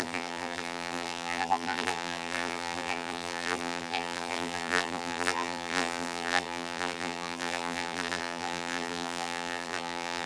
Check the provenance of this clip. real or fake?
fake